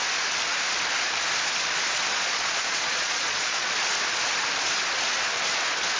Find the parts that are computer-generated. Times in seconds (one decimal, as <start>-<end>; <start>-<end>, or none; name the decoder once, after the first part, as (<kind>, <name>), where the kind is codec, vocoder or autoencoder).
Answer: 2.1-3.7 (vocoder, Vocos)